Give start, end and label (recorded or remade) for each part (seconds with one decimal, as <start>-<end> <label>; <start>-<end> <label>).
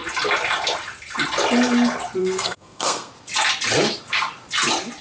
0.0-2.2 recorded; 2.2-3.1 remade; 3.1-5.0 recorded